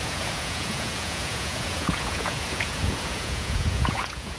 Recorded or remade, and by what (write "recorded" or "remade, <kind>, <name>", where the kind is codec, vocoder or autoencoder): remade, vocoder, Vocos